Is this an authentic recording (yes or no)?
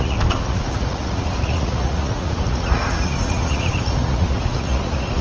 no